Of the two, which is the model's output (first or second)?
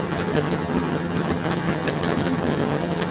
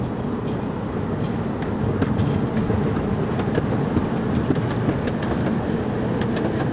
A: first